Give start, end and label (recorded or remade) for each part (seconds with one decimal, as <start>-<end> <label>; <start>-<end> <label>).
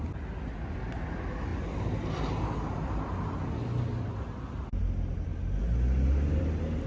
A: 0.0-6.9 recorded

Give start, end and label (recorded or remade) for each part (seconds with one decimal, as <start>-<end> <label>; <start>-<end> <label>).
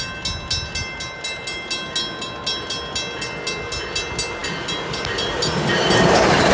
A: 0.0-6.5 recorded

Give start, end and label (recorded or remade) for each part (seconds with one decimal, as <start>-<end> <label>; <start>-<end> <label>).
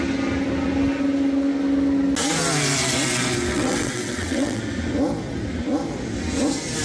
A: 0.0-3.5 recorded; 3.5-4.6 remade; 4.6-6.8 recorded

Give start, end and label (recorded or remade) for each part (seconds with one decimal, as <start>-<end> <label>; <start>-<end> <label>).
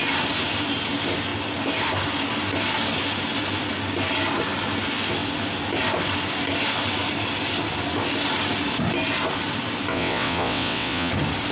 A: 0.0-9.9 recorded; 9.9-11.1 remade; 11.1-11.5 recorded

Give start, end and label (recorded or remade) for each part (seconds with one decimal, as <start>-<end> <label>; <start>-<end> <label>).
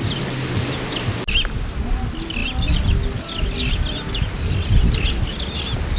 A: 0.0-6.0 recorded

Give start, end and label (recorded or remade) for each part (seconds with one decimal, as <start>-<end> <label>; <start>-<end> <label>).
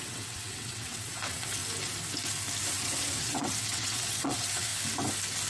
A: 0.0-1.6 remade; 1.6-2.7 recorded; 2.7-4.7 remade; 4.7-5.5 recorded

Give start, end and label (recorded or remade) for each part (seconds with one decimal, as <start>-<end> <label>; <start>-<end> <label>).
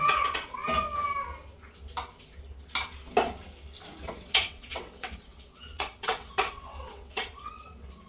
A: 0.0-0.6 remade; 0.6-4.1 recorded; 4.1-8.1 remade